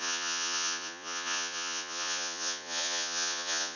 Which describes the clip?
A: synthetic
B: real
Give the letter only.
A